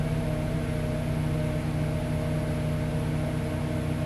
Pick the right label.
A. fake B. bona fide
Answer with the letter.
B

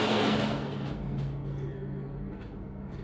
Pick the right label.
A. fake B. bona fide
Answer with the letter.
A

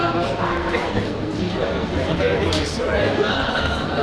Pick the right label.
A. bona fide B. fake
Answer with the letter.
B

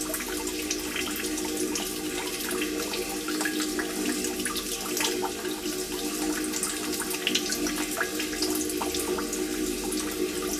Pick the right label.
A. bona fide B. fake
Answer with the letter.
A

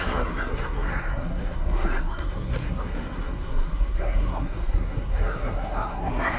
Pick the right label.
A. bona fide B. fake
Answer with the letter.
B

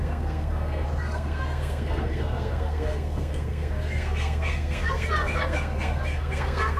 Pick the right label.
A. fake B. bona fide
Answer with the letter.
A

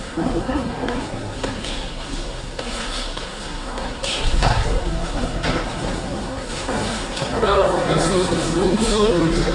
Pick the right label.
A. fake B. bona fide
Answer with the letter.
A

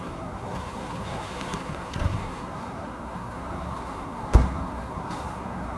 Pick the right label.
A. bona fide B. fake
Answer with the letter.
B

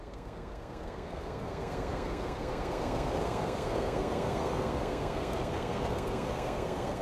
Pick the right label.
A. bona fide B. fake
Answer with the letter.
B